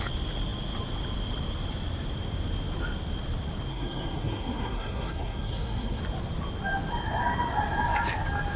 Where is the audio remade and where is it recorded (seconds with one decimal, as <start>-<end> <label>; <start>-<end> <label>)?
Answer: 0.0-3.7 recorded; 3.7-6.0 remade; 6.0-8.6 recorded